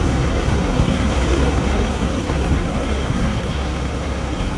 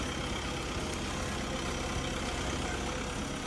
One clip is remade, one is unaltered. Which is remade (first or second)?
first